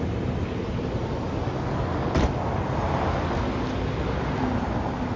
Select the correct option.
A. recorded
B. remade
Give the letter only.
A